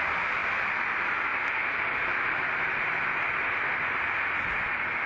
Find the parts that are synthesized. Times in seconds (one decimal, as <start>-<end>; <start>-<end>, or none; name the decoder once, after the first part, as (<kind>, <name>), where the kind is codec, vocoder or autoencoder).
none